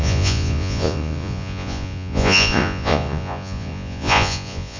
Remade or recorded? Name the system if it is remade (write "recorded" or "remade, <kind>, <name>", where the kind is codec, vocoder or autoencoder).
remade, vocoder, Vocos